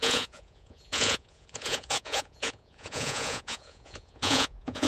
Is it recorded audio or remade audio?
remade